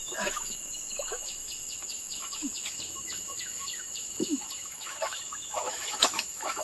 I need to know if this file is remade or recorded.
remade